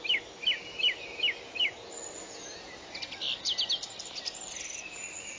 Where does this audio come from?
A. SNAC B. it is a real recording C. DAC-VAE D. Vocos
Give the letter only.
B